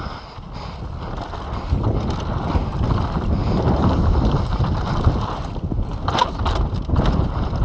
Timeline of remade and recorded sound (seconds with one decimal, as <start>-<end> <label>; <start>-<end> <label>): 0.0-3.4 recorded; 3.4-4.1 remade; 4.1-7.6 recorded